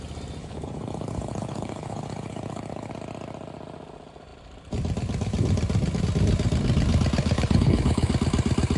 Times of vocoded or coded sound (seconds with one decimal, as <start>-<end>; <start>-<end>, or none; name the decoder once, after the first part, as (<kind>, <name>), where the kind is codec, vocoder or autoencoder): 0.4-2.9 (codec, HILCodec); 7.2-8.1